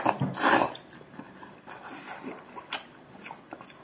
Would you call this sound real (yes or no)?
yes